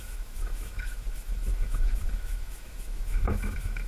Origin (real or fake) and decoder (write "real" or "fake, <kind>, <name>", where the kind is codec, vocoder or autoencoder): fake, autoencoder, DAC-VAE